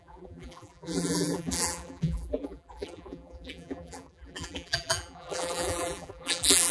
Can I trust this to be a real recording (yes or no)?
no